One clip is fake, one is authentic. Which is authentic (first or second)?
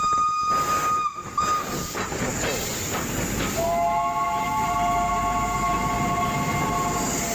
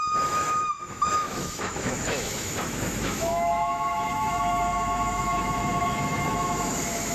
first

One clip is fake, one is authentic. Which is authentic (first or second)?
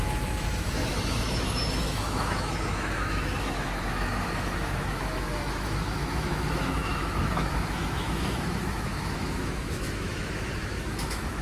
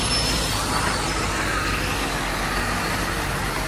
second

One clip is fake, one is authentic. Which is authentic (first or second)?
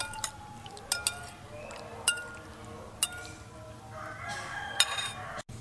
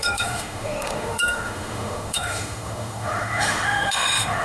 first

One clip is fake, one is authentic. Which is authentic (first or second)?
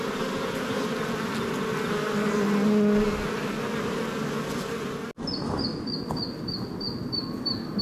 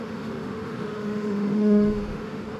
first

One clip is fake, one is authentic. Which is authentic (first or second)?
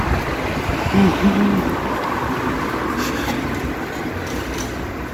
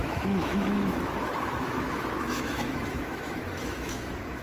first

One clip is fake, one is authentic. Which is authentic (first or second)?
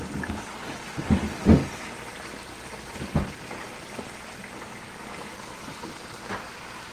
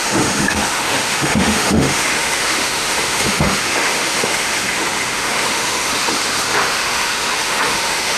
first